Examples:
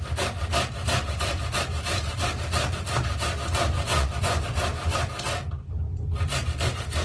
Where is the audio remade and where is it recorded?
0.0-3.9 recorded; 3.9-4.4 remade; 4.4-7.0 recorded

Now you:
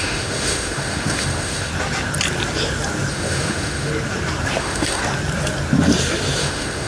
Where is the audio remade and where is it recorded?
0.0-1.7 remade; 1.7-3.1 recorded; 3.1-3.9 remade; 3.9-4.6 recorded; 4.6-5.0 remade; 5.0-6.4 recorded; 6.4-6.9 remade

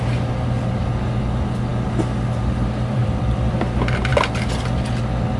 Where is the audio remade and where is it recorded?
0.0-3.0 recorded; 3.0-3.6 remade; 3.6-5.4 recorded

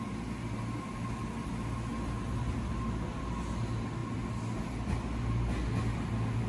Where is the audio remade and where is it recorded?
0.0-6.5 recorded